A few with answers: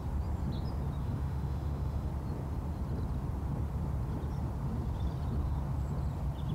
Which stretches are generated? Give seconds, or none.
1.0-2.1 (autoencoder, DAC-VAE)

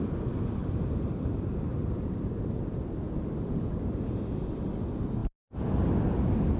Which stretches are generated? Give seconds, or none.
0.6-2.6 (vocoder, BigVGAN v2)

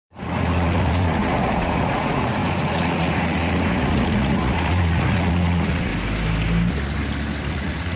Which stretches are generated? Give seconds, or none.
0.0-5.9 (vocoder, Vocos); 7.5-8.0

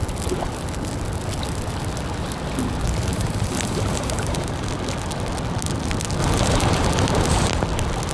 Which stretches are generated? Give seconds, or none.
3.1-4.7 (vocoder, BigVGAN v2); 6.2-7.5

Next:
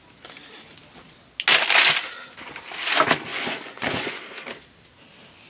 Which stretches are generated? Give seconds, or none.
3.3-4.2 (vocoder, Vocos)